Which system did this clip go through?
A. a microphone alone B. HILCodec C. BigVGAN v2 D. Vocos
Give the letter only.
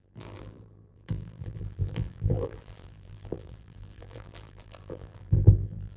C